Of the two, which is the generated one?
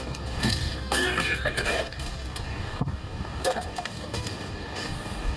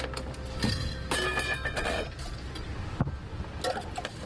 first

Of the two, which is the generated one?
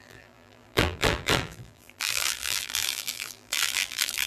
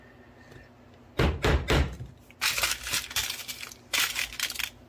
first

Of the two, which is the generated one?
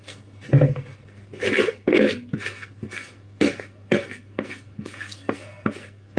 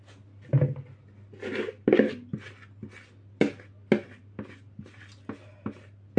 first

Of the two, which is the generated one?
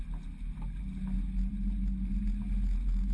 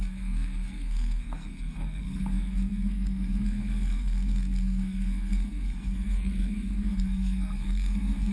second